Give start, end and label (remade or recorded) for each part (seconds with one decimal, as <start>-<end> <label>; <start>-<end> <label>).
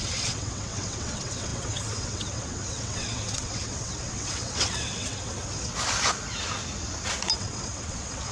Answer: 0.0-5.7 remade; 5.7-7.4 recorded; 7.4-8.3 remade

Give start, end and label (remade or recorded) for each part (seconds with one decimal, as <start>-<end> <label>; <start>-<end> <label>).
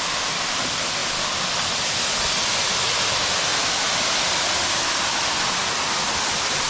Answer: 0.0-6.7 recorded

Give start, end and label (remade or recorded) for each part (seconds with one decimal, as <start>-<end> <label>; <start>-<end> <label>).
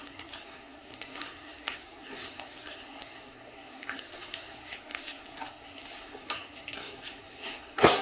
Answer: 0.0-8.0 remade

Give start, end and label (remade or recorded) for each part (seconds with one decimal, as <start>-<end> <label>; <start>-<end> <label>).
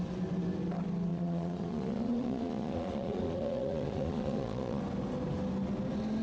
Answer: 0.0-1.1 recorded; 1.1-4.8 remade; 4.8-6.2 recorded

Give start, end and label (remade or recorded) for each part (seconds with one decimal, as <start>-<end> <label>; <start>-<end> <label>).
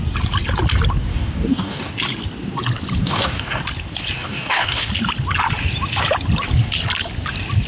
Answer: 0.0-1.1 recorded; 1.1-1.9 remade; 1.9-3.0 recorded; 3.0-3.6 remade; 3.6-4.2 recorded; 4.2-4.9 remade; 4.9-7.7 recorded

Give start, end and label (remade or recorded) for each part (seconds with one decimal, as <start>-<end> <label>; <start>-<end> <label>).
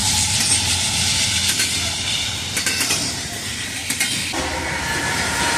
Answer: 0.0-2.5 recorded; 2.5-3.8 remade; 3.8-5.6 recorded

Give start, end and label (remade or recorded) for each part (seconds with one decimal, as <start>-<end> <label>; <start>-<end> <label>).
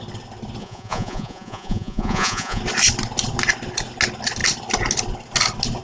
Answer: 0.0-0.6 recorded; 0.6-2.6 remade; 2.6-5.8 recorded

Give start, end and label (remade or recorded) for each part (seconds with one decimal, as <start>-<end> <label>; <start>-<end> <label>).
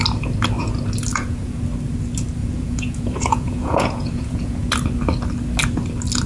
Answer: 0.0-1.1 recorded; 1.1-1.6 remade; 1.6-2.4 recorded; 2.4-4.7 remade; 4.7-6.3 recorded